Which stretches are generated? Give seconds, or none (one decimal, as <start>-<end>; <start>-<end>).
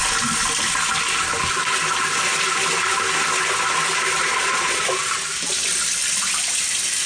4.2-4.8